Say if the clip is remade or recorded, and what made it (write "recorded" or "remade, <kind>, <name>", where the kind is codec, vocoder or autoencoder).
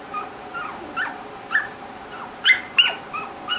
recorded